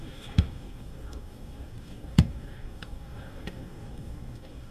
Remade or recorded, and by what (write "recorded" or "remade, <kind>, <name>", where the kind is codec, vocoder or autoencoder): remade, codec, DAC